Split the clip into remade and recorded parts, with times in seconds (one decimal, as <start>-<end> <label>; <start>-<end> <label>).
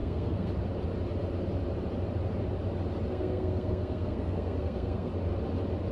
0.0-0.5 remade; 0.5-3.1 recorded; 3.1-5.1 remade; 5.1-5.9 recorded